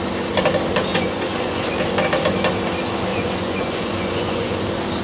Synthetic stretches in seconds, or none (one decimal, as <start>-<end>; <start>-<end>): 0.9-1.7; 3.1-4.6